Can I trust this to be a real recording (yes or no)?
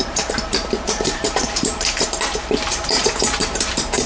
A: no